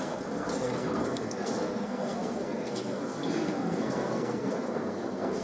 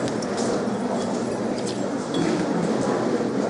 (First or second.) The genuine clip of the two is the second